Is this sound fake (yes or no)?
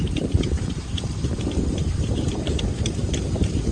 yes